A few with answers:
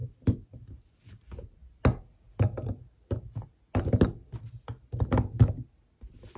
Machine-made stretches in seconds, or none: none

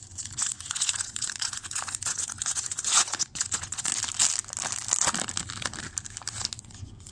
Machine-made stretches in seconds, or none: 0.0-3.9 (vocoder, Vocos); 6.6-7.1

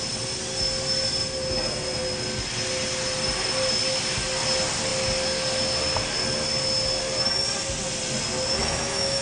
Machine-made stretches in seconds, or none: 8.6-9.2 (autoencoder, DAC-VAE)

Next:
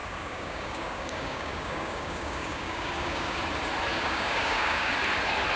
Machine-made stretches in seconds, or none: 0.0-3.4 (codec, DAC); 3.9-4.9

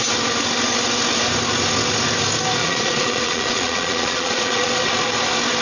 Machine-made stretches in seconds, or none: 2.6-4.7 (vocoder, Vocos)

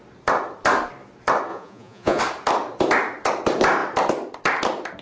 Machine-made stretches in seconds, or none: 1.5-2.2 (vocoder, Vocos)